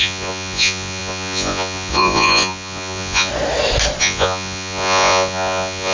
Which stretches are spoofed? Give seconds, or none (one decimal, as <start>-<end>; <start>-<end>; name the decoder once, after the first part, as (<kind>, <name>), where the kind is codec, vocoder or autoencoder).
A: 0.0-3.3 (vocoder, Vocos); 4.0-5.9

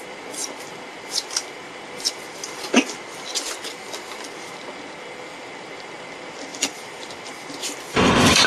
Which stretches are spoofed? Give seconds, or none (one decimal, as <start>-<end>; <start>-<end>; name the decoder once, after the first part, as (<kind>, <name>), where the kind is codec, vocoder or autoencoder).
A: 6.5-7.0 (vocoder, BigVGAN v2); 7.6-8.5

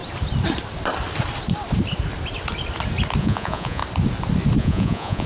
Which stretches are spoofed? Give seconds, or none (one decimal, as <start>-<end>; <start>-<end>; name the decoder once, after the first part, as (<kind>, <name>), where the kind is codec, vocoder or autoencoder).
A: 3.2-3.8 (vocoder, Vocos); 4.6-5.3